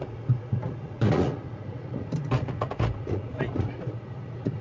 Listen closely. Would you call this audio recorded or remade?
remade